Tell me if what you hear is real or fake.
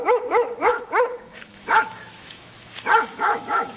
fake